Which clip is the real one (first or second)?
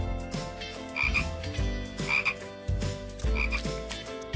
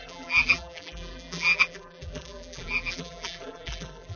first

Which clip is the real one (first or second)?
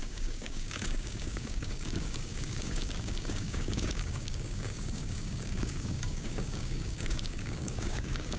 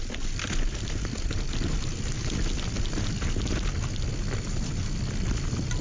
second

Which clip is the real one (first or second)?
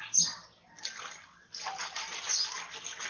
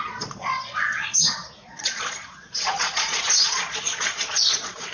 first